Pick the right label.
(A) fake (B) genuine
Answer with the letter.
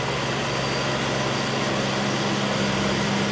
B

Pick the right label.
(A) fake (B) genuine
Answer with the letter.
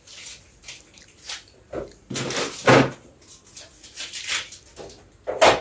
B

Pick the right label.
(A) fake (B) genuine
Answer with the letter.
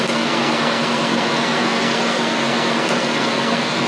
A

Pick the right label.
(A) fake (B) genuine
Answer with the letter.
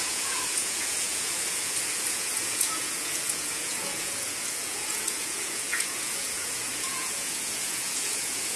A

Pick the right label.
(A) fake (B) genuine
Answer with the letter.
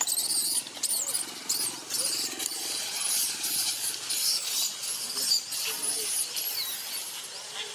B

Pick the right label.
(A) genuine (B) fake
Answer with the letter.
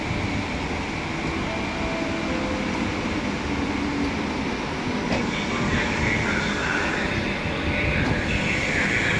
A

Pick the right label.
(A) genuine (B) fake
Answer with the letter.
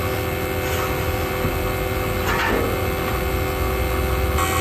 A